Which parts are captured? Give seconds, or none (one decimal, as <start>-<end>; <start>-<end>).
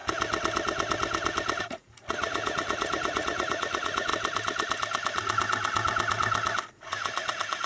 0.0-1.6; 4.1-6.7